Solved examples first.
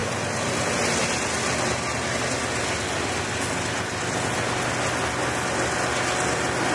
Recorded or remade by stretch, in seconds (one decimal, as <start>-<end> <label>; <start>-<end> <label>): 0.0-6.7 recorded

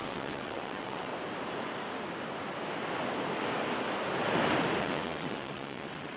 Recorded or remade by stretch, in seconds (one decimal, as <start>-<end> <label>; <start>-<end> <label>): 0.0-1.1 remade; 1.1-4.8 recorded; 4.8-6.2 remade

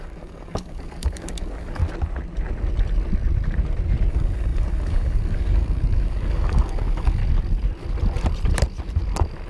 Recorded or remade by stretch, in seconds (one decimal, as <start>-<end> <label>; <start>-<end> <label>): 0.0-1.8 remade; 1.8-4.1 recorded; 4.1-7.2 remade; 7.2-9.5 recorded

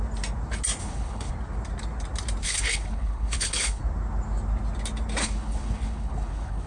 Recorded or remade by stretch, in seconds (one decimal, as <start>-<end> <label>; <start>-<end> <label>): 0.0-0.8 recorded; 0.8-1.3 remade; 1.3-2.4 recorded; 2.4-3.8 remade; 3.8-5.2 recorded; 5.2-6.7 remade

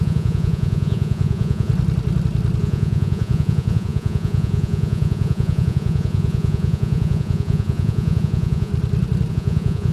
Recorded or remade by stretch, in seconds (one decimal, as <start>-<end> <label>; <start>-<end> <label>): 0.0-1.7 remade; 1.7-2.6 recorded; 2.6-8.7 remade; 8.7-9.3 recorded; 9.3-9.9 remade